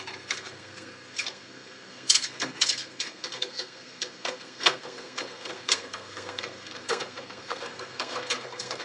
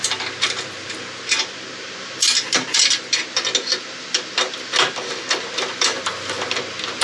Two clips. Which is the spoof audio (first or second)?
first